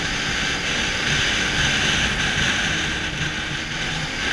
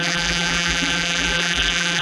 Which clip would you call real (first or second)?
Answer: first